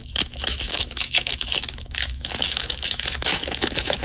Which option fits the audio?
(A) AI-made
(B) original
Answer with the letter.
A